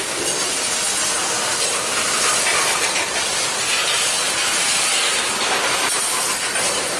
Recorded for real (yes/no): yes